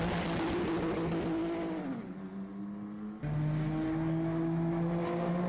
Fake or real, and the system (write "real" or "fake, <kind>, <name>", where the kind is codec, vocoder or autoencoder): real